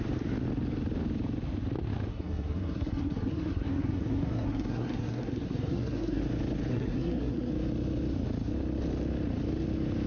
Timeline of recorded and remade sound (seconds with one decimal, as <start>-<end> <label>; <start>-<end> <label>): 0.0-2.1 recorded; 2.1-6.2 remade; 6.2-6.7 recorded; 6.7-7.5 remade; 7.5-10.1 recorded